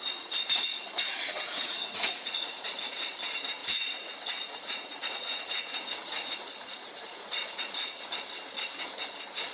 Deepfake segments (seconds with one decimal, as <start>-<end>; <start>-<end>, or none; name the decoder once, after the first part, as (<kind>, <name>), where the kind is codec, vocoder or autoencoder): 1.5-3.1 (vocoder, Vocos); 3.6-8.1